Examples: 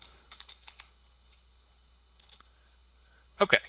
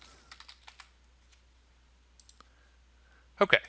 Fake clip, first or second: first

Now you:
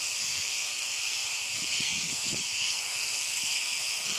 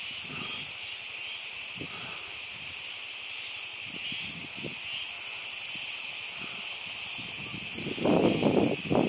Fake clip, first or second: first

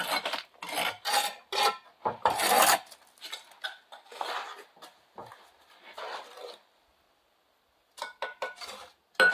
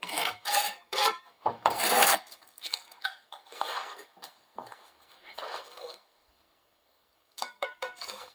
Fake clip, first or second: second